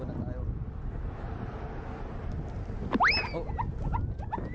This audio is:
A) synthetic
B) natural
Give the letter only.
B